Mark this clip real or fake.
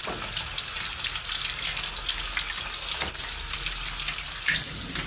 real